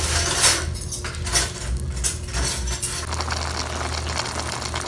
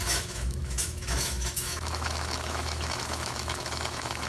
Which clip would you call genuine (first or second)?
first